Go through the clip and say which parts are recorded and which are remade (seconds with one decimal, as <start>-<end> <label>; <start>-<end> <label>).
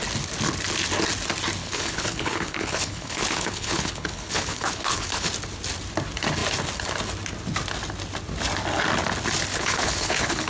0.0-1.6 recorded; 1.6-5.3 remade; 5.3-9.5 recorded; 9.5-10.5 remade